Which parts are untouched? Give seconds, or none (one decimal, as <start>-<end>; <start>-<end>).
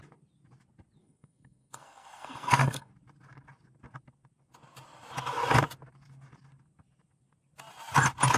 0.0-1.0; 2.9-8.4